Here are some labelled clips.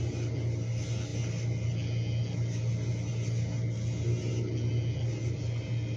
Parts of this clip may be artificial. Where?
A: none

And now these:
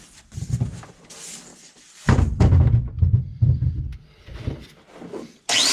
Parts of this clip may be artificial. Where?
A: 1.5-3.6